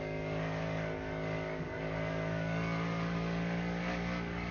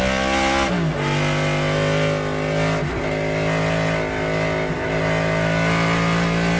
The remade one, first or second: first